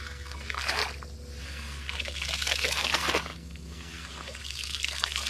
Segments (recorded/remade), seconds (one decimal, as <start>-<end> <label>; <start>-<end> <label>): 0.0-0.8 remade; 0.8-1.4 recorded; 1.4-5.3 remade